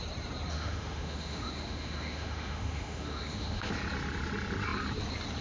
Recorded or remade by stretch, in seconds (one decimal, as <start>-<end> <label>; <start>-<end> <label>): 0.0-0.5 recorded; 0.5-3.7 remade; 3.7-5.4 recorded